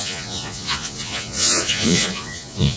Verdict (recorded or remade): remade